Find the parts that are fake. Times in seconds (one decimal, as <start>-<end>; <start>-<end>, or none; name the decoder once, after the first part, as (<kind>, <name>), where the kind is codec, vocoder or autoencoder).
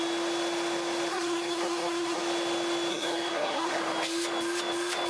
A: 1.1-2.2 (codec, SNAC); 2.9-3.8